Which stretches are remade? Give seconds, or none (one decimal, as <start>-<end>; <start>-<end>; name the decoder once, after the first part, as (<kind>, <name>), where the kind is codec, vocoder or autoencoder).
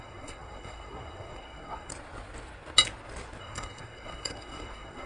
0.0-1.9 (codec, SNAC); 3.4-5.1